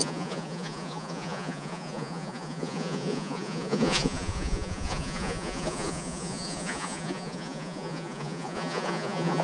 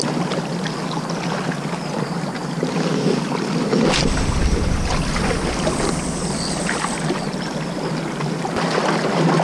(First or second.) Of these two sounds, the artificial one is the first